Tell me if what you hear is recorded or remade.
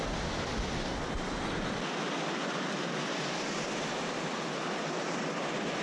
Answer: recorded